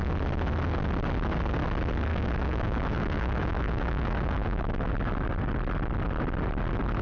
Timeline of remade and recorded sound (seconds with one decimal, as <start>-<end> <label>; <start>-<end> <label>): 0.0-2.1 recorded; 2.1-4.9 remade; 4.9-7.0 recorded